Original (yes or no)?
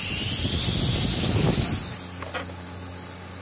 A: yes